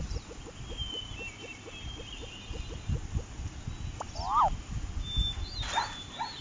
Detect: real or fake real